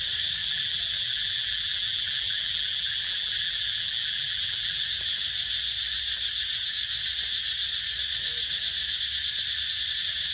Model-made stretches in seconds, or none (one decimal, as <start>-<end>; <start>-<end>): 0.4-4.8